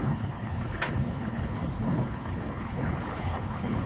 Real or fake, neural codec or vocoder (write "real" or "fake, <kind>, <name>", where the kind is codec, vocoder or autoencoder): fake, codec, HILCodec